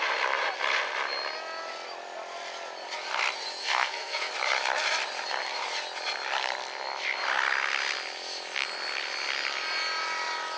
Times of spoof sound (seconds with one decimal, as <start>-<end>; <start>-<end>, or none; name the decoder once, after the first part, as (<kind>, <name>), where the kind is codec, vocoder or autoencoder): 3.6-4.3 (codec, SNAC)